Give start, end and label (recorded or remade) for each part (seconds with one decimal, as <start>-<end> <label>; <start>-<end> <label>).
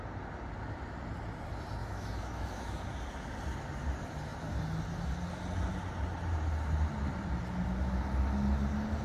0.0-1.8 recorded; 1.8-2.8 remade; 2.8-9.0 recorded